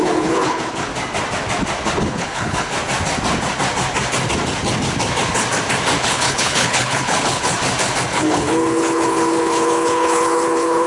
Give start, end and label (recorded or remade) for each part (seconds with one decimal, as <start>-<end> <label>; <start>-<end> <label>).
0.0-0.9 remade; 0.9-2.0 recorded; 2.0-2.7 remade; 2.7-6.0 recorded; 6.0-7.5 remade; 7.5-8.1 recorded; 8.1-10.9 remade